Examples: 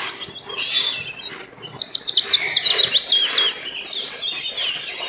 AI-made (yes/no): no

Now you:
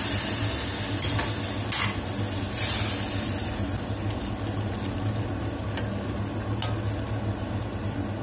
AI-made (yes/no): no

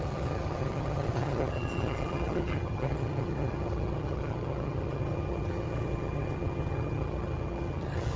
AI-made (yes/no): yes